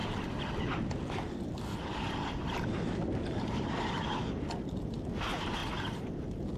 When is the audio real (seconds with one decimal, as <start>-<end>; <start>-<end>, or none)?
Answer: 0.0-6.6